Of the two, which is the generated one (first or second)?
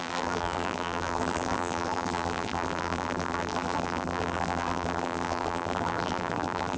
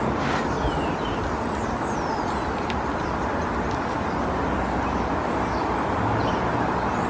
first